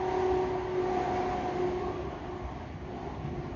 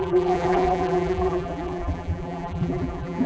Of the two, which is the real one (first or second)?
first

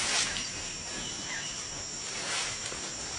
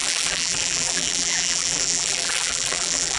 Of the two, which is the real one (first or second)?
first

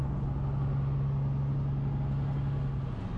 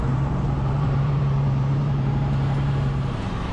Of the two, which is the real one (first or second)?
first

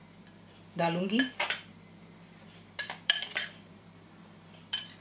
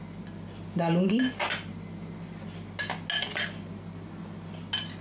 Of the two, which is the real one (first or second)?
second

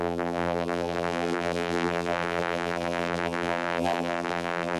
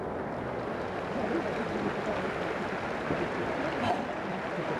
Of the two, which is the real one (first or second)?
second